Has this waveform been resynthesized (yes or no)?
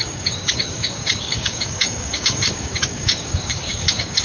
yes